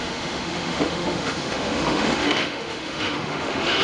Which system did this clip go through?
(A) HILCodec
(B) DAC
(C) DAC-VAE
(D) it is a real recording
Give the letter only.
C